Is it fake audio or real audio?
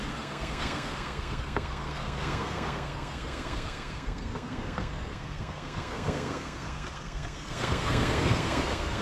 fake